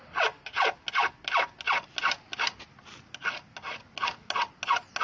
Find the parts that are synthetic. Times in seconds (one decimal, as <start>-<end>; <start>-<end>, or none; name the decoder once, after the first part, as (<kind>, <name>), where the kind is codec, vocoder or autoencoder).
none